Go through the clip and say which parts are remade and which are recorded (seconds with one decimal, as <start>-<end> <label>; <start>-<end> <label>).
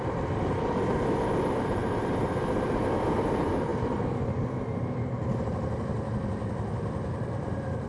0.0-7.9 remade